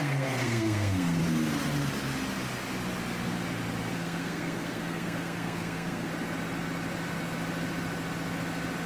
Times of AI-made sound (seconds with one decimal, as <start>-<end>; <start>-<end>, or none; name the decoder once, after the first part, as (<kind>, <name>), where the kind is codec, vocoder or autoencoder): 0.0-1.2 (codec, SNAC); 3.9-6.1